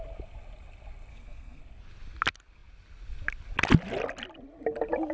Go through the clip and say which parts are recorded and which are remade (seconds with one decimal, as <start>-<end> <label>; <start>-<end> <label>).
0.0-1.1 recorded; 1.1-1.6 remade; 1.6-5.1 recorded